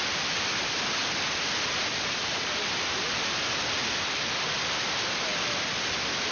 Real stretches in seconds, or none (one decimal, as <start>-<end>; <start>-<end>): 0.0-6.3